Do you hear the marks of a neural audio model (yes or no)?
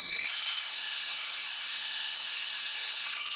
yes